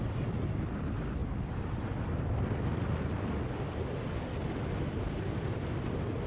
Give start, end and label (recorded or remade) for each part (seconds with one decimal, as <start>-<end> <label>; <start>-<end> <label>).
0.0-6.3 recorded